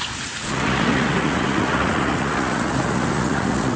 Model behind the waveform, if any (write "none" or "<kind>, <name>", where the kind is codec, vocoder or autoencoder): vocoder, Vocos